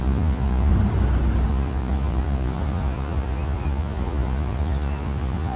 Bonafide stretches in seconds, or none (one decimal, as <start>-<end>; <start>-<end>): 0.7-1.5